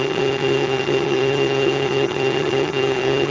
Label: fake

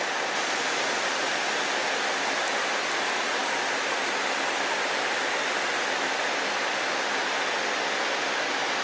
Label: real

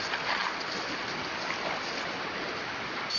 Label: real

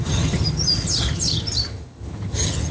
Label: fake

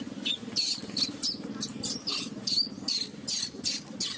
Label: real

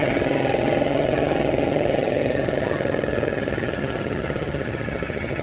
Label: fake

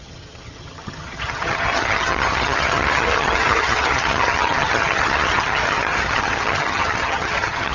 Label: fake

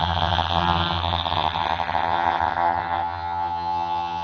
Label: fake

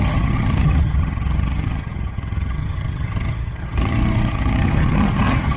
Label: fake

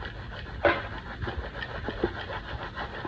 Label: real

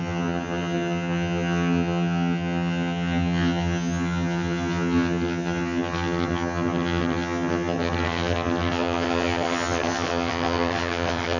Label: fake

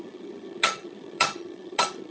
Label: fake